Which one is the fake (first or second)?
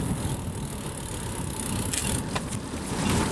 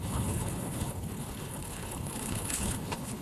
second